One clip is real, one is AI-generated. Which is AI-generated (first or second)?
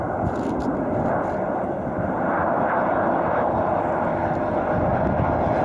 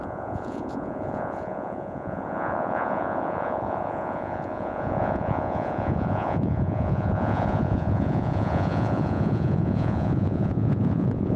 second